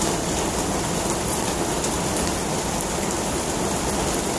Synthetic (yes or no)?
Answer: no